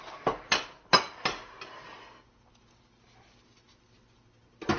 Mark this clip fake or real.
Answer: real